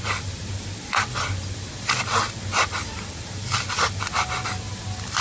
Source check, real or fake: real